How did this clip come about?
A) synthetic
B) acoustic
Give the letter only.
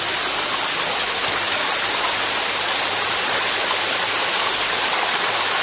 B